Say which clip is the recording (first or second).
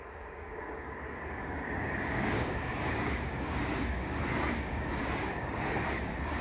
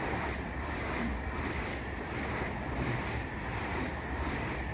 second